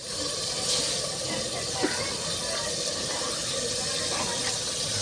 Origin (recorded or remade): recorded